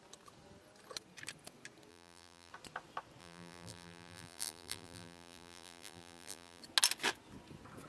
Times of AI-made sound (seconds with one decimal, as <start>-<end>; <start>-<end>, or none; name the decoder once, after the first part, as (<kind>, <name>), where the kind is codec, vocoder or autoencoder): 1.9-2.5 (vocoder, BigVGAN v2); 3.2-6.6